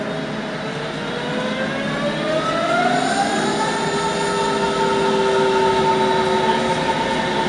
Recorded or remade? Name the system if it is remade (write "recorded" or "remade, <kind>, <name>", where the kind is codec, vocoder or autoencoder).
recorded